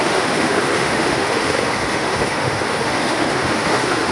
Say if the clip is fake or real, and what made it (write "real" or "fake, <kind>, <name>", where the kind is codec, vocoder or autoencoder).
fake, autoencoder, DAC-VAE